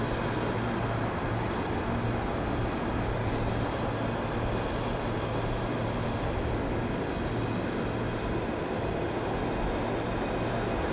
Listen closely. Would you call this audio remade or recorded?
recorded